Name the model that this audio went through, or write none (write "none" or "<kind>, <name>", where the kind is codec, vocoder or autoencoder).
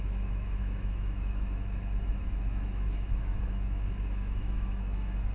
autoencoder, DAC-VAE